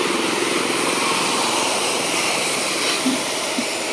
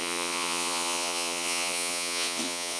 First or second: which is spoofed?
second